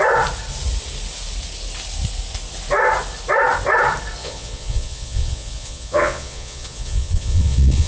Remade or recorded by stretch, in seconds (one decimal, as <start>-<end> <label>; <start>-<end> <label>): 0.0-4.2 recorded; 4.2-7.9 remade